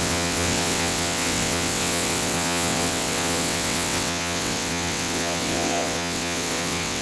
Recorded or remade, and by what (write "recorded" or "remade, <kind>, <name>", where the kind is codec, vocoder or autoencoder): remade, vocoder, WaveNeXt